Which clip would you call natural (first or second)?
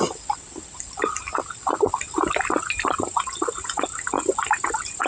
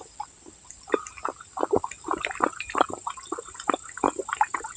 second